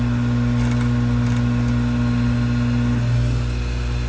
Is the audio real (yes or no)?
yes